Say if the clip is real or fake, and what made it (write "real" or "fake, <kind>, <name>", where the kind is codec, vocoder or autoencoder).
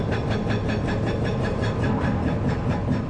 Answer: real